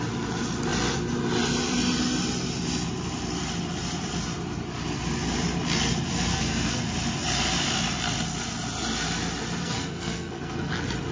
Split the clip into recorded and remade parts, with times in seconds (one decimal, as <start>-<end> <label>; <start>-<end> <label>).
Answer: 0.0-6.3 recorded; 6.3-6.8 remade; 6.8-9.6 recorded; 9.6-10.7 remade; 10.7-11.1 recorded